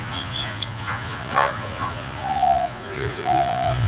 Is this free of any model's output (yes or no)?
no